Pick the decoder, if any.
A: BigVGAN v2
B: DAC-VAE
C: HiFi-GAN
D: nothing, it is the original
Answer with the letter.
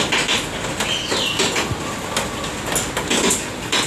D